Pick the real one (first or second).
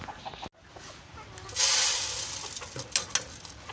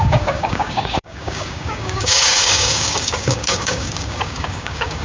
first